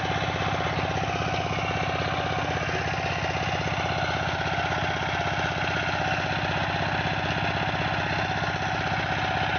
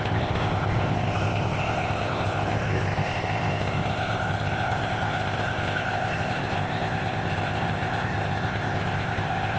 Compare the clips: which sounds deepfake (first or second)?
second